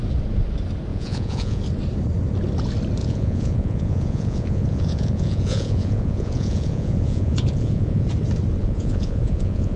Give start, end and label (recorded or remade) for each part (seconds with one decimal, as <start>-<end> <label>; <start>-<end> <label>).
0.0-0.9 recorded; 0.9-1.6 remade; 1.6-3.0 recorded; 3.0-8.1 remade; 8.1-8.6 recorded; 8.6-9.8 remade